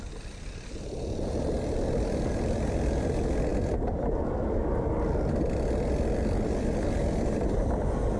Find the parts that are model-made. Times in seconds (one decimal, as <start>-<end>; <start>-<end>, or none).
none